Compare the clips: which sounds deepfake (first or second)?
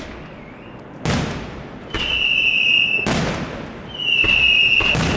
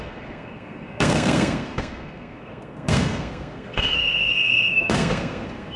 second